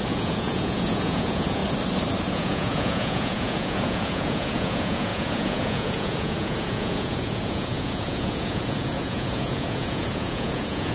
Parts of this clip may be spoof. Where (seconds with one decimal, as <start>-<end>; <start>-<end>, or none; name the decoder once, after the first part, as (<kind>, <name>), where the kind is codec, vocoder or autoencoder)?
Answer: 0.0-1.6 (vocoder, Vocos); 2.3-10.9